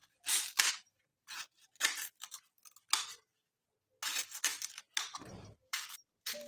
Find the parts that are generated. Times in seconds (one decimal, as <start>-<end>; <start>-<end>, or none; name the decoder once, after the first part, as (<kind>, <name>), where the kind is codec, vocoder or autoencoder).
1.1-2.4 (vocoder, BigVGAN v2); 4.5-6.5